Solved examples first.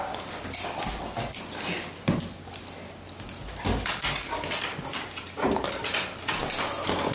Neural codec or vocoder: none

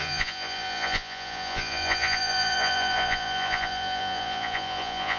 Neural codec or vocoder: vocoder, Vocos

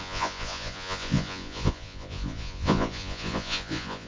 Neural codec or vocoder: vocoder, Vocos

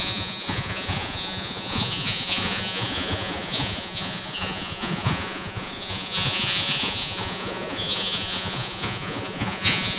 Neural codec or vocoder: vocoder, Vocos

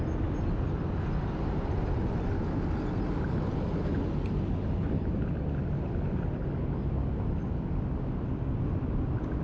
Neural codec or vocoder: none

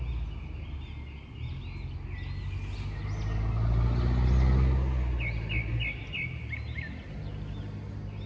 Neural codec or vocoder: none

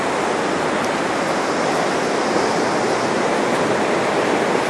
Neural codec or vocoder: none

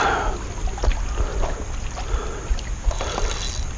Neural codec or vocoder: none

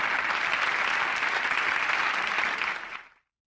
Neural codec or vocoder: none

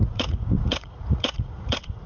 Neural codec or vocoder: vocoder, Vocos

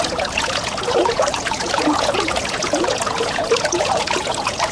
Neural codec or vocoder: vocoder, Vocos